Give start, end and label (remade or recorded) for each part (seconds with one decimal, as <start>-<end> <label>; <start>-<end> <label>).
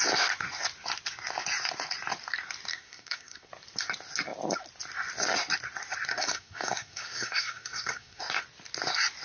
0.0-2.7 recorded; 2.7-3.5 remade; 3.5-6.1 recorded; 6.1-8.2 remade; 8.2-9.2 recorded